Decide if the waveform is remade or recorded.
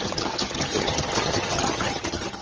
remade